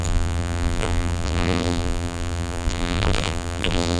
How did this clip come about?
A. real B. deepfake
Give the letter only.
B